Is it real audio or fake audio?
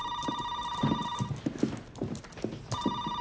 real